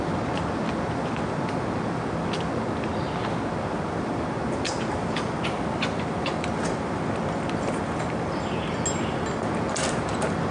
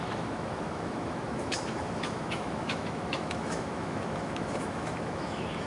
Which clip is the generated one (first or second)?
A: second